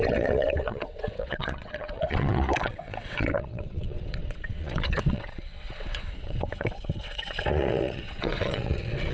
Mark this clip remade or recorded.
remade